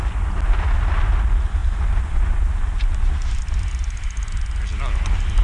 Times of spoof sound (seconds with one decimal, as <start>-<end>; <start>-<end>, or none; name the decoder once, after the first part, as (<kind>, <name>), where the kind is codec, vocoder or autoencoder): none